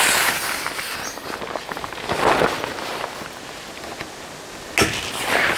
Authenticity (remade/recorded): recorded